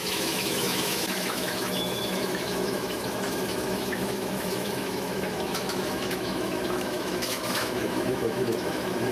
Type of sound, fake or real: fake